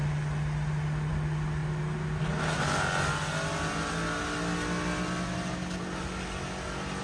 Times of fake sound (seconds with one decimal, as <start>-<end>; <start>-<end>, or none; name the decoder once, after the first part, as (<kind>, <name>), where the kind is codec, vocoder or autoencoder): none